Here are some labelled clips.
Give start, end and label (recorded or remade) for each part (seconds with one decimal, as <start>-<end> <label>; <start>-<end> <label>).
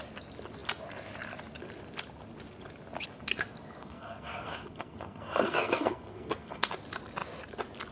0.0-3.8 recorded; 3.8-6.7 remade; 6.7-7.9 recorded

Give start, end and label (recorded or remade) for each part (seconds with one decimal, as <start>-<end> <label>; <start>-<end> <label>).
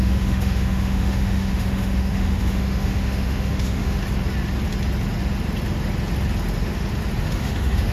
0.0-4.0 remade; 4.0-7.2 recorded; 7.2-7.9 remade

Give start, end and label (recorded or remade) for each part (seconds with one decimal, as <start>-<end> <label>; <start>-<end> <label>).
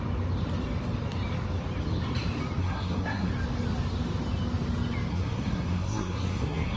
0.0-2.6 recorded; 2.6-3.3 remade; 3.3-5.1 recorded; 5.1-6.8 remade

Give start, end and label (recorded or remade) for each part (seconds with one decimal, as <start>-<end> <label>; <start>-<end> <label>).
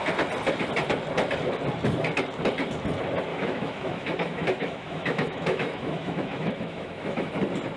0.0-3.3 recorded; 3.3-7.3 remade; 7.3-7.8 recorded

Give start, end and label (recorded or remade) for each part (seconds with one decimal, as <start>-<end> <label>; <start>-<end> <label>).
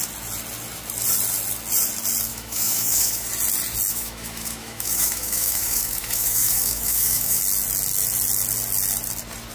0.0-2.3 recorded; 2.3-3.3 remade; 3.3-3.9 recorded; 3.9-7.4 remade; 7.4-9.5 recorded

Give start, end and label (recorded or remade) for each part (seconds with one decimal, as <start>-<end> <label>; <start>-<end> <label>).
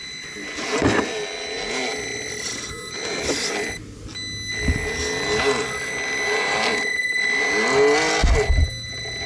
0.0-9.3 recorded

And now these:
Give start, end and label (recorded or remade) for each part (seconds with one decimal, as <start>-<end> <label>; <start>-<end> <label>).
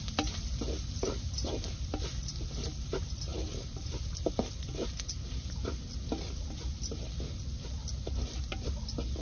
0.0-9.2 recorded